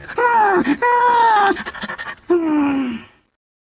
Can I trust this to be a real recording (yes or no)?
yes